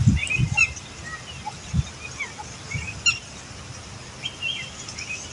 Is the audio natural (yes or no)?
yes